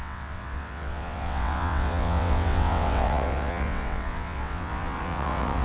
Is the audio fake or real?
fake